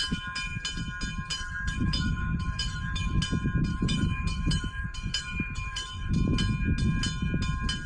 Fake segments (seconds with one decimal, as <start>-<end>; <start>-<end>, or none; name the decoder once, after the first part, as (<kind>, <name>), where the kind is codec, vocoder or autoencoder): 1.3-3.2 (autoencoder, DAC-VAE); 3.7-6.1